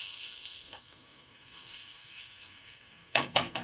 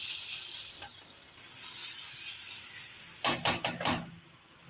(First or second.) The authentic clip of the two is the second